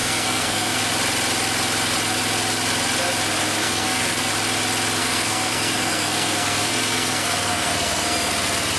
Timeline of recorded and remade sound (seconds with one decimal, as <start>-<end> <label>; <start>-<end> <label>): 0.0-0.8 remade; 0.8-3.6 recorded; 3.6-4.3 remade; 4.3-5.0 recorded; 5.0-8.3 remade; 8.3-8.8 recorded